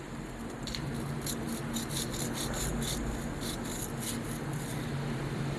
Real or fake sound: fake